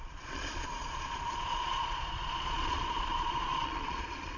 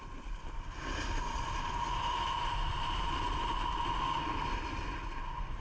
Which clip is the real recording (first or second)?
second